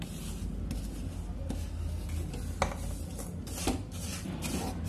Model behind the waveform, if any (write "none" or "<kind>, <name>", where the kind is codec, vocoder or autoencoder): none